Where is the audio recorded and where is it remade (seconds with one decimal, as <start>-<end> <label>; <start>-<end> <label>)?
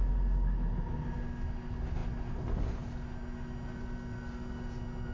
0.0-5.1 recorded